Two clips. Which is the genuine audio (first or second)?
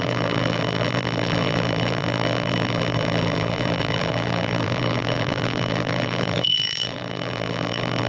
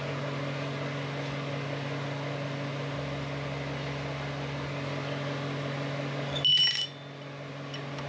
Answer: second